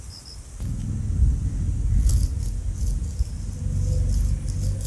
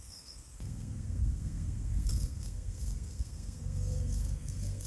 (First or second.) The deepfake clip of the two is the second